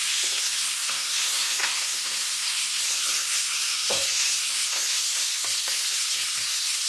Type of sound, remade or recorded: remade